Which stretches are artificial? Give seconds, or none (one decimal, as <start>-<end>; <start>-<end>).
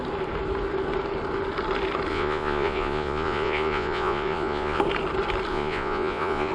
2.1-4.8; 5.5-6.5